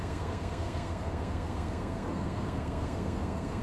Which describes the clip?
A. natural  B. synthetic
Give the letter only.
B